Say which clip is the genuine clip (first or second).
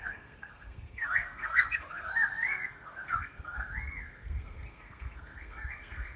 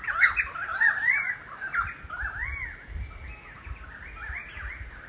second